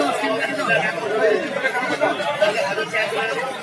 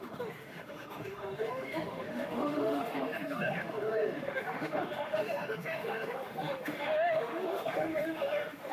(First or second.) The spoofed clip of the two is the second